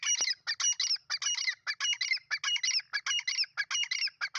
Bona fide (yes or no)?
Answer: yes